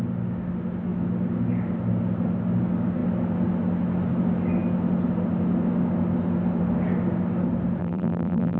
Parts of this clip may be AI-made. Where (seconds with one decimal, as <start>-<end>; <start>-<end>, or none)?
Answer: 7.8-8.6